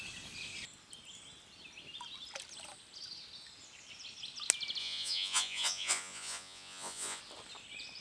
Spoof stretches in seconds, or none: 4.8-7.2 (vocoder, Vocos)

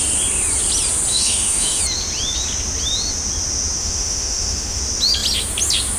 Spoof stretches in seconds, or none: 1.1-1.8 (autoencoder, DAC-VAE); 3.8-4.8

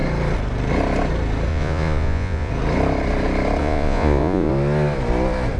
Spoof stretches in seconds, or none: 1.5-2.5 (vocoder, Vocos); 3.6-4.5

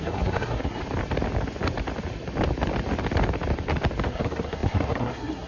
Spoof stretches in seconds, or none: 0.0-0.8 (codec, SNAC); 4.1-5.5

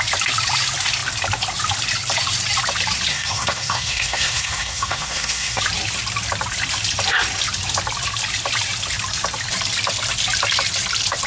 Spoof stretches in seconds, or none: 3.1-5.6 (codec, SNAC)

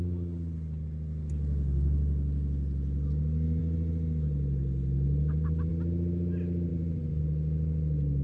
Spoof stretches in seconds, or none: 6.7-7.2 (vocoder, BigVGAN v2)

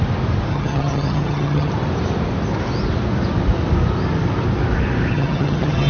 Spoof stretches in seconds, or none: 0.5-1.7 (vocoder, HiFi-GAN); 5.1-5.9

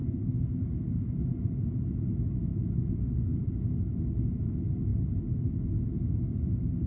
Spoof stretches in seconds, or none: 0.0-0.6 (codec, SNAC)